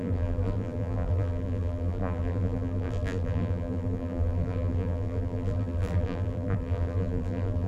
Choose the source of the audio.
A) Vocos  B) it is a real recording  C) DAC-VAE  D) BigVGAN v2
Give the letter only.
D